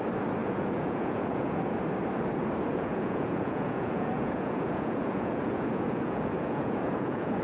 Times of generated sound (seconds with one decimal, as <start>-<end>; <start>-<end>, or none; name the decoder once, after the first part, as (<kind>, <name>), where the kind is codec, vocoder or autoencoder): 0.4-1.8 (vocoder, Vocos); 2.7-7.4